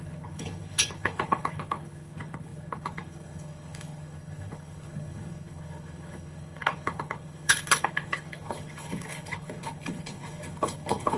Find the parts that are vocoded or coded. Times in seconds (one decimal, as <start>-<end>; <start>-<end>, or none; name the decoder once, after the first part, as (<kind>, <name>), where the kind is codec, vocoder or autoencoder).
0.0-11.2 (codec, HILCodec)